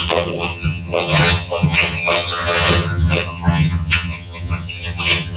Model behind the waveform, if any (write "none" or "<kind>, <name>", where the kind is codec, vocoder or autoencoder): vocoder, HiFi-GAN